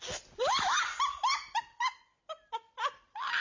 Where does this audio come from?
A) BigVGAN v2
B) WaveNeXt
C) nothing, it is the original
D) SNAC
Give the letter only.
C